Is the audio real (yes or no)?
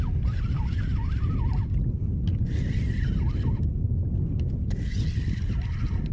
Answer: yes